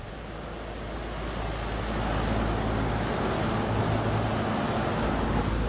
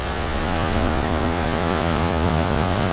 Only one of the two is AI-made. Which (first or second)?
second